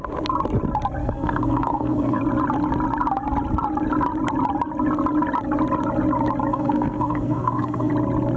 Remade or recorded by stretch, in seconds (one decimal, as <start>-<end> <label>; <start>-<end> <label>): 0.0-1.0 recorded; 1.0-2.2 remade; 2.2-6.5 recorded; 6.5-7.9 remade; 7.9-8.4 recorded